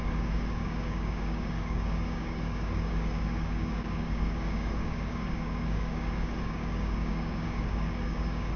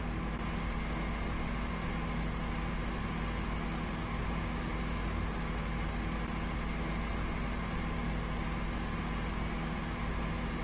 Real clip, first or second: second